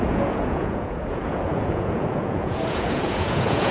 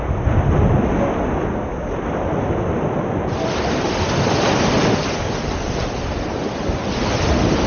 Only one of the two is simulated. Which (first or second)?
first